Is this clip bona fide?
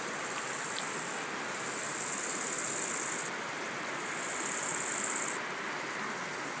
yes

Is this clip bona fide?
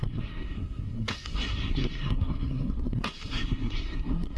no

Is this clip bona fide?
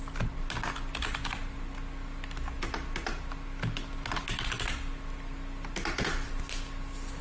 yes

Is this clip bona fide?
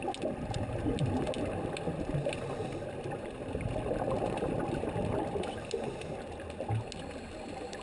yes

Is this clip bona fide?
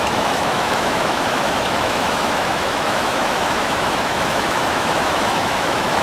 no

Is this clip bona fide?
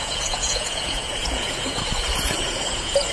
no